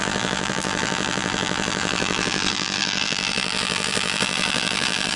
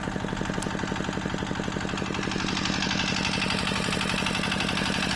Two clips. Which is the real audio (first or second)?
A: second